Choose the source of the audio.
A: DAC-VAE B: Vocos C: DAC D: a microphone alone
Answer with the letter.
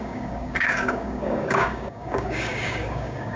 C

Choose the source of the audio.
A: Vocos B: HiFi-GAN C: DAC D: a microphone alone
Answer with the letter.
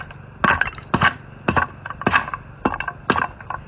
D